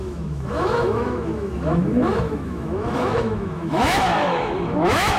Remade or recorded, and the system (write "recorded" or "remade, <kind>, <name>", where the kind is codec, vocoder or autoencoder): remade, autoencoder, DAC-VAE